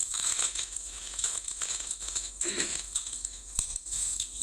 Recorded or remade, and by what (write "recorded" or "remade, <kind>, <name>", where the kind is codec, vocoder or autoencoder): remade, autoencoder, DAC-VAE